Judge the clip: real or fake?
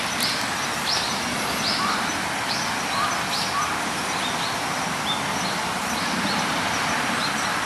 real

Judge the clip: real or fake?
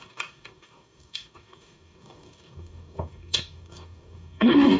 fake